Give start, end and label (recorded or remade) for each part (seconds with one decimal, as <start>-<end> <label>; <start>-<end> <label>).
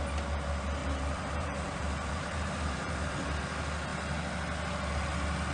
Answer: 0.0-0.8 recorded; 0.8-3.4 remade; 3.4-5.5 recorded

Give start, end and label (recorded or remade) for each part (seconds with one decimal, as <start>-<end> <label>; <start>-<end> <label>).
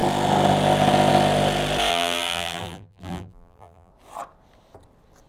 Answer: 0.0-1.9 recorded; 1.9-3.9 remade; 3.9-5.3 recorded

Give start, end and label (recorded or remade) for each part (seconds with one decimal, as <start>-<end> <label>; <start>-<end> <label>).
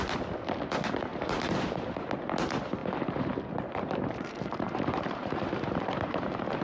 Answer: 0.0-1.1 recorded; 1.1-2.1 remade; 2.1-2.8 recorded; 2.8-6.6 remade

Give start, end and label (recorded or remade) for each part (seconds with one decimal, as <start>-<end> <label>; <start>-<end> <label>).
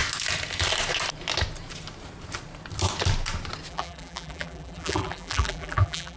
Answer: 0.0-3.7 recorded; 3.7-6.2 remade